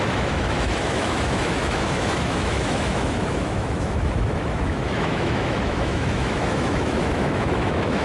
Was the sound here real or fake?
fake